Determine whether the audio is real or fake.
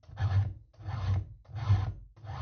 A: real